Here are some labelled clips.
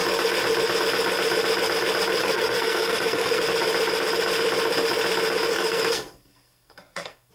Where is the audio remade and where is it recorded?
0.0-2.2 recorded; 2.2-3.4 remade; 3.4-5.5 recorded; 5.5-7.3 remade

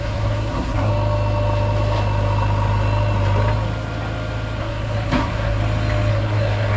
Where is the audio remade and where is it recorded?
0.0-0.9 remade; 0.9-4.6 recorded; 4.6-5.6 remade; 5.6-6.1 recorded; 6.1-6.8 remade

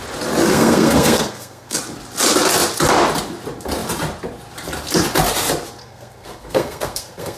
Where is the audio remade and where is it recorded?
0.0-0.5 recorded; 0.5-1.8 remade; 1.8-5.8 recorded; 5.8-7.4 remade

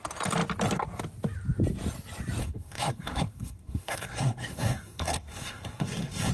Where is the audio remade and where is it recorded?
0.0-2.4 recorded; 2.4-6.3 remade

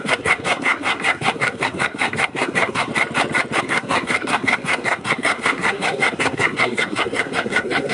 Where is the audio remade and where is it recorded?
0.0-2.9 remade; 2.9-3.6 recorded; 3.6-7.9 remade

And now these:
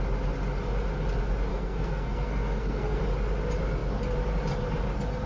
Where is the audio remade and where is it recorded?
0.0-1.5 recorded; 1.5-3.0 remade; 3.0-5.3 recorded

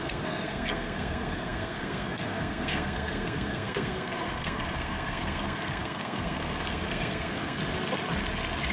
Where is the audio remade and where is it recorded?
0.0-7.6 remade; 7.6-8.7 recorded

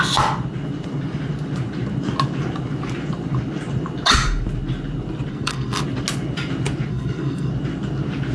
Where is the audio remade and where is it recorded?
0.0-5.3 recorded; 5.3-5.8 remade; 5.8-6.9 recorded; 6.9-7.5 remade; 7.5-8.3 recorded